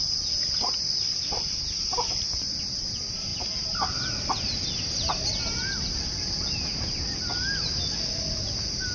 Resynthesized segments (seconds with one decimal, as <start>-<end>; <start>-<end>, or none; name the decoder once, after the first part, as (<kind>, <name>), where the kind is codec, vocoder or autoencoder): none